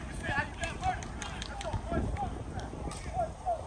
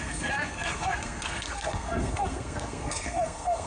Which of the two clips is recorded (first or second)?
first